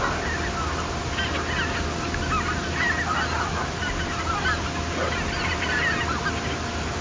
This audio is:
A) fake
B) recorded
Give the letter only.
B